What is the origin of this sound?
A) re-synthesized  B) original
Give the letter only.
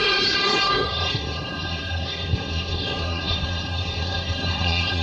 A